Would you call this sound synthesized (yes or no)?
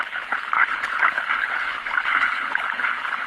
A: yes